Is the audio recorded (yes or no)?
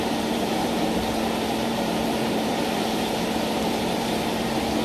no